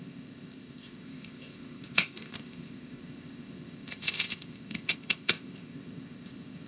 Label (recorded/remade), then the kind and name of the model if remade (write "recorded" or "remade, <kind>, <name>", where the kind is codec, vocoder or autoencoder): remade, codec, ZipCodec